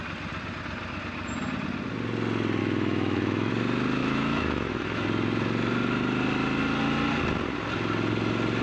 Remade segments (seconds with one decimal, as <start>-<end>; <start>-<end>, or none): 2.6-3.5; 4.0-5.0